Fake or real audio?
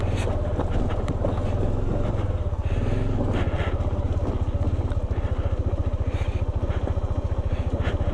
real